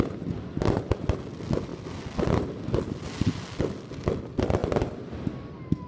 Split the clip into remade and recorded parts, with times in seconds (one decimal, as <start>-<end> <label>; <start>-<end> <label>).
0.0-5.9 recorded